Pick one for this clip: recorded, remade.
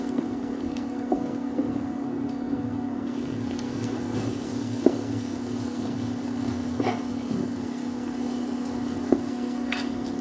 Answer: remade